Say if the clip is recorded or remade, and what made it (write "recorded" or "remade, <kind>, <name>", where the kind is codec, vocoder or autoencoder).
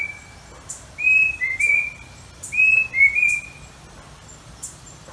recorded